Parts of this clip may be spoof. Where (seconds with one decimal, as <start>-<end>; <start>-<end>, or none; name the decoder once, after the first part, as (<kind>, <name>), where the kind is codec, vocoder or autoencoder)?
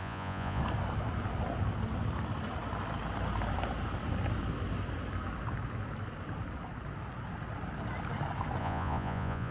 0.0-0.6 (vocoder, Vocos); 8.6-9.5